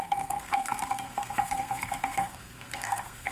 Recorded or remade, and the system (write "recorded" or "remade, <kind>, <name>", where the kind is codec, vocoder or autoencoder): remade, codec, SNAC